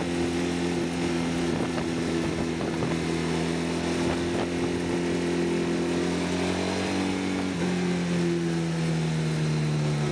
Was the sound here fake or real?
real